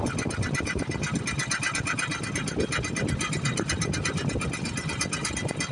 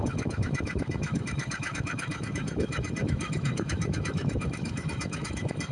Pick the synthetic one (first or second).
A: second